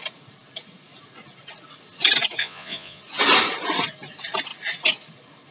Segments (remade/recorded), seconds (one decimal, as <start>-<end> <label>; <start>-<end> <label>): 0.0-2.4 recorded; 2.4-3.0 remade; 3.0-5.5 recorded